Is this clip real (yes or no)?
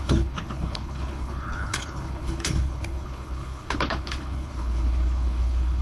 no